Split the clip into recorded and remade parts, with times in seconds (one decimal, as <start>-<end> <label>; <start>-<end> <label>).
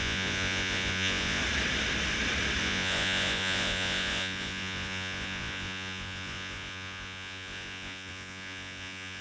0.0-1.4 remade; 1.4-2.6 recorded; 2.6-9.2 remade